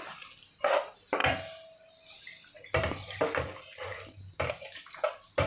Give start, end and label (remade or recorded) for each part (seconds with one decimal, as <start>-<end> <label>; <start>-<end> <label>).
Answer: 0.0-5.5 recorded